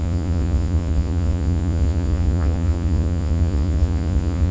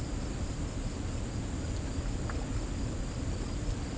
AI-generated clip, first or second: first